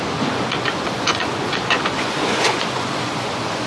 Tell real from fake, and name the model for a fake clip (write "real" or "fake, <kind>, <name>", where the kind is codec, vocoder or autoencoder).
fake, vocoder, Vocos